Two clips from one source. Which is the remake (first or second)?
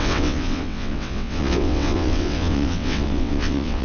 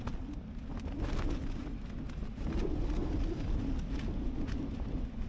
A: first